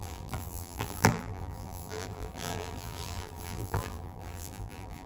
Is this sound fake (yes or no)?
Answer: yes